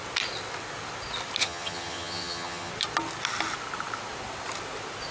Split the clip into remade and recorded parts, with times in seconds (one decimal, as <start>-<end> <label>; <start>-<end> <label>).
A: 0.0-1.4 recorded; 1.4-2.7 remade; 2.7-5.1 recorded